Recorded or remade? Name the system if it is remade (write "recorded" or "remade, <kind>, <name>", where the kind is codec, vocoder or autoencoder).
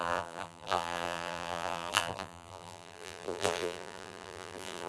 remade, vocoder, BigVGAN v2